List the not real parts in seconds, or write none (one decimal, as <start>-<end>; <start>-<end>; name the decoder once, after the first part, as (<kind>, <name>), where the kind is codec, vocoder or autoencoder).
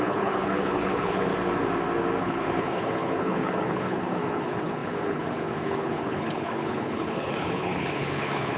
0.0-1.3 (codec, HILCodec); 2.2-8.6